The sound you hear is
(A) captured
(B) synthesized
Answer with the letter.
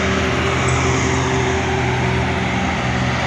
A